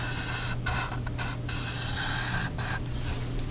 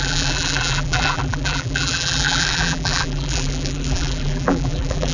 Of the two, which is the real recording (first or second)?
first